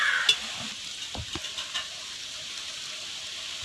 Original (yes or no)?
yes